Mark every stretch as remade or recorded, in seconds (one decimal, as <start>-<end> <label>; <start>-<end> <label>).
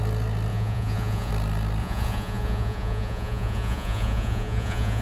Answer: 0.0-0.5 recorded; 0.5-1.3 remade; 1.3-1.8 recorded; 1.8-5.0 remade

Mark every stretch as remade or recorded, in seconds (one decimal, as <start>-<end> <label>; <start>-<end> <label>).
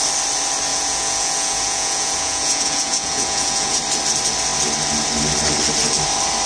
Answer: 0.0-0.7 recorded; 0.7-3.8 remade; 3.8-6.5 recorded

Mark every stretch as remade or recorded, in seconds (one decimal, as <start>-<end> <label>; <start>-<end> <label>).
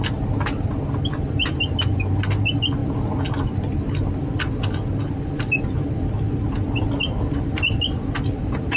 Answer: 0.0-8.8 recorded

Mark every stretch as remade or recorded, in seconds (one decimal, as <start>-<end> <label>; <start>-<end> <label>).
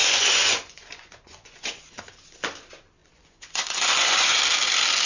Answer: 0.0-2.0 remade; 2.0-3.0 recorded; 3.0-4.4 remade; 4.4-5.1 recorded